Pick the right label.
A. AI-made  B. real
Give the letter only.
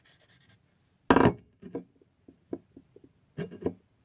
B